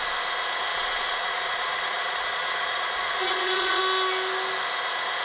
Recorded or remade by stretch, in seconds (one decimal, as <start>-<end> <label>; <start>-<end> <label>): 0.0-0.7 recorded; 0.7-3.8 remade; 3.8-5.2 recorded